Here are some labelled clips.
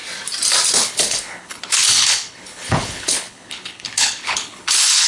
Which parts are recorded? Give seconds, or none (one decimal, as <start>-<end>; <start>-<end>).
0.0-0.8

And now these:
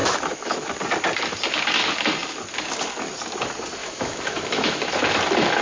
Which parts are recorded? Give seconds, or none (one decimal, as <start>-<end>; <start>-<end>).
0.7-3.8; 5.0-5.6

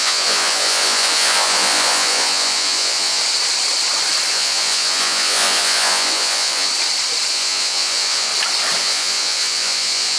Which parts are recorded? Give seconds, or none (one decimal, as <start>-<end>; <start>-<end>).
3.2-4.3; 6.7-7.3; 8.3-8.8

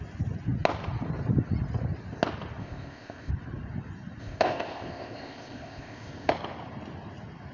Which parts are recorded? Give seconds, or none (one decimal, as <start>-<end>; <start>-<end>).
0.0-2.6; 3.3-4.2; 6.3-7.5

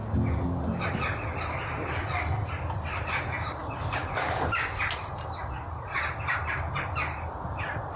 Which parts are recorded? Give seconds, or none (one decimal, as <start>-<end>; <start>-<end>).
0.0-8.0